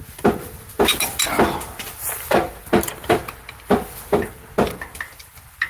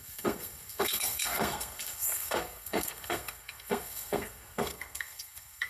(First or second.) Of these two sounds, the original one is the first